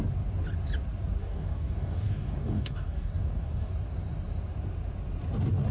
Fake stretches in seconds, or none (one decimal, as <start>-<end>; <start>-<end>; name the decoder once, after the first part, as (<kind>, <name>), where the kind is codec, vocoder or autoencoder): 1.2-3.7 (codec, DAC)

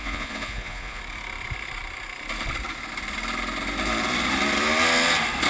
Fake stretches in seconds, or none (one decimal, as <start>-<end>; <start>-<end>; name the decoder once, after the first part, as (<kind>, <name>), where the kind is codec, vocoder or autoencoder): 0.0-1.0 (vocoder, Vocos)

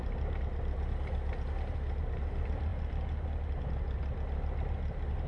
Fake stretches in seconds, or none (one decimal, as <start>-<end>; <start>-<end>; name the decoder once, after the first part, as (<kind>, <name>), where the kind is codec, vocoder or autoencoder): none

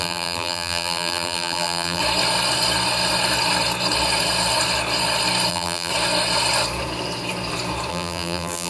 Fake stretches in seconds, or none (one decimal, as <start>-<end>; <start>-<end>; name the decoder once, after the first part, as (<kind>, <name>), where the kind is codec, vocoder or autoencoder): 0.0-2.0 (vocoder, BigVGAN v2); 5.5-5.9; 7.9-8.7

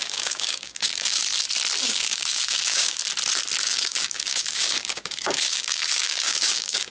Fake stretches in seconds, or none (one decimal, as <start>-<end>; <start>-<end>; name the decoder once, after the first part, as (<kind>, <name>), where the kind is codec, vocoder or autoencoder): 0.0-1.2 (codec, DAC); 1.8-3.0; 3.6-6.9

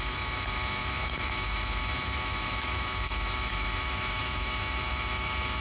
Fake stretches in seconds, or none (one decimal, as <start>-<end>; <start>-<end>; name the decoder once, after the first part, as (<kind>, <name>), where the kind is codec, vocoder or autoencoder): 0.0-5.6 (autoencoder, DAC-VAE)

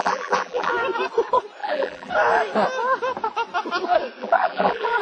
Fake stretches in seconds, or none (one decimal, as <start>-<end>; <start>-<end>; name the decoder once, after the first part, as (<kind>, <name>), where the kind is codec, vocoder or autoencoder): 0.0-0.7 (vocoder, BigVGAN v2); 1.6-2.1; 4.2-5.0